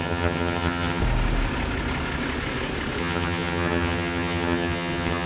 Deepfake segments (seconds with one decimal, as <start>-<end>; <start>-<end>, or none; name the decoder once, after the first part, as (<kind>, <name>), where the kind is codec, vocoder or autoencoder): 0.0-1.0 (vocoder, HiFi-GAN); 3.0-5.3